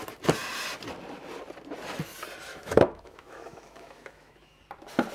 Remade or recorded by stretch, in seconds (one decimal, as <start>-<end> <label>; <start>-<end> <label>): 0.0-2.5 recorded; 2.5-4.6 remade; 4.6-5.1 recorded